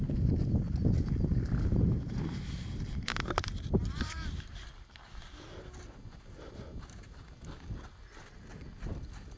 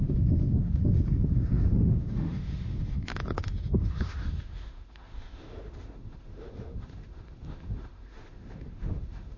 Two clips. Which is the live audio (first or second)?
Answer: first